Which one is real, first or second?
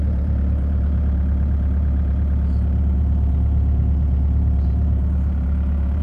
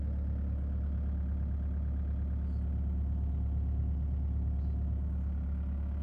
second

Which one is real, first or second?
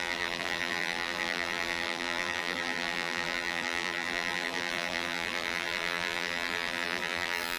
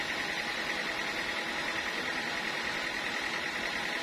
second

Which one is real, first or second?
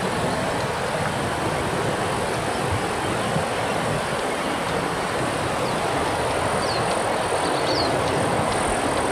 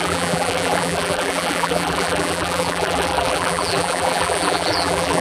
first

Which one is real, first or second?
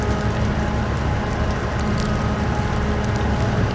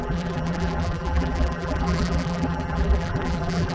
first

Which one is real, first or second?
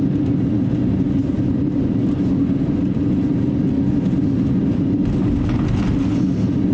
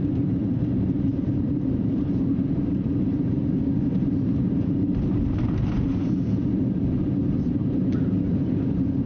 first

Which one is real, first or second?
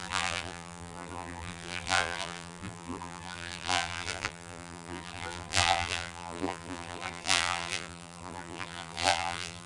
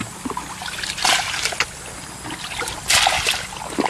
second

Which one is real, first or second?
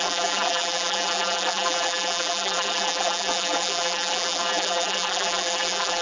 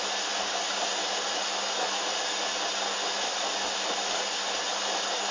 second